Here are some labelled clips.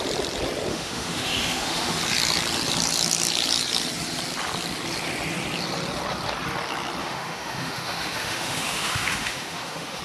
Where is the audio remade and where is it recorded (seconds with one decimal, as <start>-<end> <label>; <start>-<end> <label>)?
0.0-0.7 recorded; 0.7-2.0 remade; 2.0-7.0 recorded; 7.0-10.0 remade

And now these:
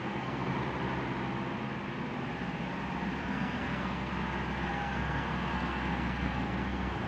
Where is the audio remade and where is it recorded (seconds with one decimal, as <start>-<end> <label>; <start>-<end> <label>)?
0.0-0.5 remade; 0.5-3.2 recorded; 3.2-4.1 remade; 4.1-4.7 recorded; 4.7-7.1 remade

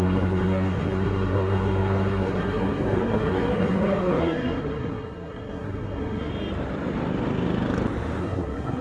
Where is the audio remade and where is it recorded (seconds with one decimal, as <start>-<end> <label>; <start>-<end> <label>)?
0.0-6.3 remade; 6.3-8.2 recorded; 8.2-8.8 remade

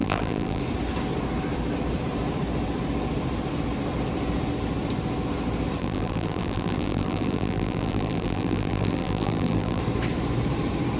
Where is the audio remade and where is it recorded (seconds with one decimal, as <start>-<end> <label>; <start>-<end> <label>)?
0.0-0.6 remade; 0.6-5.8 recorded; 5.8-9.8 remade; 9.8-11.0 recorded

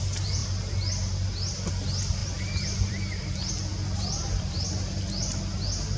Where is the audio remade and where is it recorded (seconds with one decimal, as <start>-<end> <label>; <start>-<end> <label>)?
0.0-2.2 recorded; 2.2-5.4 remade; 5.4-6.0 recorded